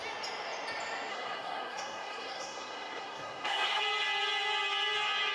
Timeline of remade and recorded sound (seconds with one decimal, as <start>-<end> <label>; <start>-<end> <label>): 0.0-1.1 recorded; 1.1-3.8 remade; 3.8-5.3 recorded